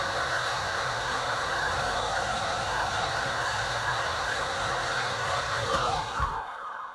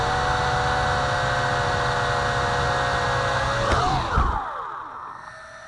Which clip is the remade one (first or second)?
first